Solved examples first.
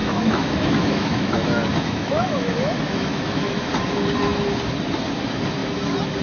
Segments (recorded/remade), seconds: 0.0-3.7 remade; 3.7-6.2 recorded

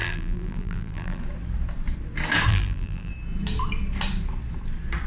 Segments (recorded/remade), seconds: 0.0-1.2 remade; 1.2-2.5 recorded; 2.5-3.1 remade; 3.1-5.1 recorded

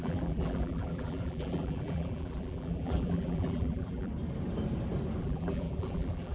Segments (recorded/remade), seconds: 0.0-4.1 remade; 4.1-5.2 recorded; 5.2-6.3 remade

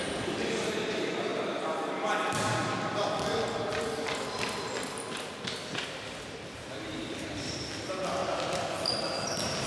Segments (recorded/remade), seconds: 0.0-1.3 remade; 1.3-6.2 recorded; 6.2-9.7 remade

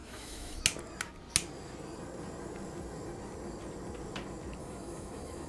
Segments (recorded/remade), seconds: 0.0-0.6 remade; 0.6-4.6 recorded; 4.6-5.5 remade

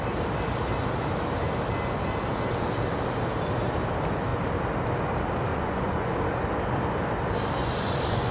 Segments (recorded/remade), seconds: 0.0-5.5 recorded; 5.5-6.1 remade; 6.1-7.6 recorded; 7.6-8.3 remade

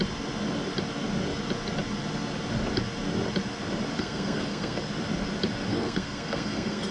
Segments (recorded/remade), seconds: 0.0-3.9 recorded; 3.9-4.9 remade; 4.9-5.7 recorded; 5.7-6.9 remade

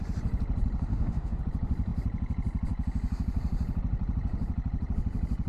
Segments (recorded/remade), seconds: 0.0-0.9 recorded; 0.9-1.4 remade; 1.4-5.5 recorded